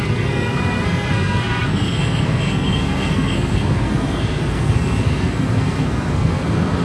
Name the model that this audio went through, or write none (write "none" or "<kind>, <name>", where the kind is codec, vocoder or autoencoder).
codec, SNAC